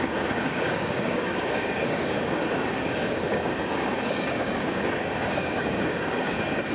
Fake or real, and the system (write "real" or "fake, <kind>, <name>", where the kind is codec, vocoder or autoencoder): fake, codec, DAC